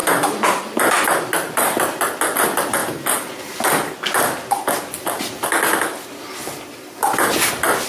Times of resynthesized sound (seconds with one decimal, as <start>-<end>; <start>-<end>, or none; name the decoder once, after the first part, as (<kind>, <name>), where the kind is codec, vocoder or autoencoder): none